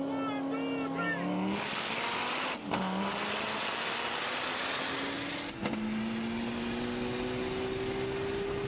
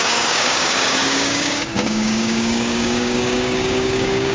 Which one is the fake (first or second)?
second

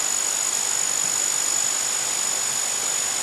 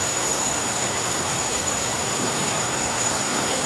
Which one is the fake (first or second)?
second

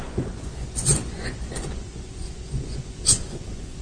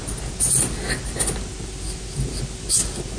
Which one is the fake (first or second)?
first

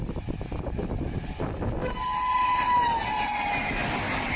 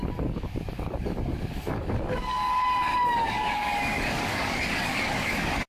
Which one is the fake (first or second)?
second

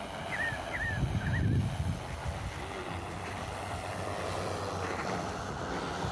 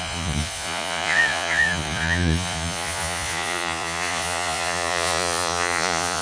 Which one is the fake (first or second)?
second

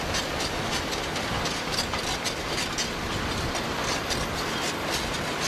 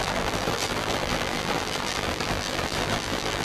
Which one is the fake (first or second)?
second